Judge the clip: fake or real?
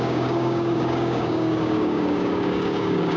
fake